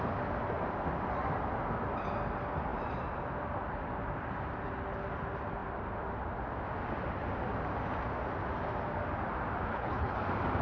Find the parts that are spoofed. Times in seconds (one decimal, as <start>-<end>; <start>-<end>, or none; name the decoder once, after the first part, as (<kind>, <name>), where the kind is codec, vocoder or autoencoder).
9.7-10.2 (codec, HILCodec)